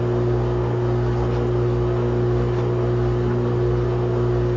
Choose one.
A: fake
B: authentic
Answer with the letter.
B